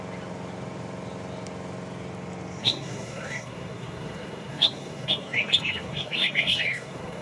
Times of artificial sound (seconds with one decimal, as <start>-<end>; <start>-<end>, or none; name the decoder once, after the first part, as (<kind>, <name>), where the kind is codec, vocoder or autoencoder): 2.6-7.2 (codec, SNAC)